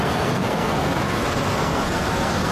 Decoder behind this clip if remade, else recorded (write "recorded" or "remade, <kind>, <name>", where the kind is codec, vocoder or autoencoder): remade, codec, SNAC